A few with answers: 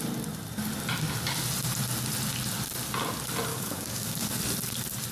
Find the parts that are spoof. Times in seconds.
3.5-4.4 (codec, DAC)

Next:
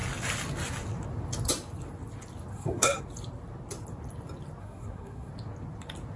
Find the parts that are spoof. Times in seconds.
2.5-3.0 (codec, SNAC); 4.6-5.3

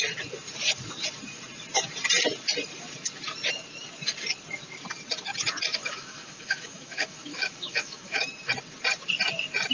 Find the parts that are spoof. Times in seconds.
5.7-8.2 (autoencoder, DAC-VAE)

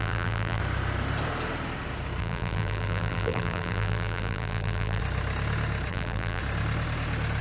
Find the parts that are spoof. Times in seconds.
0.0-0.6 (vocoder, BigVGAN v2); 2.2-5.0; 5.9-6.4

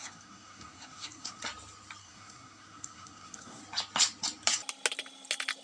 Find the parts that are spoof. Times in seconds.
0.0-1.4 (codec, SNAC); 2.0-3.6

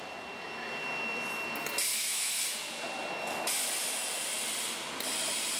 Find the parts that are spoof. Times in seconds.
1.9-2.4 (autoencoder, DAC-VAE)

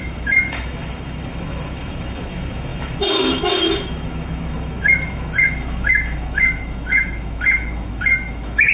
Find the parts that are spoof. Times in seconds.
0.0-8.7 (autoencoder, DAC-VAE)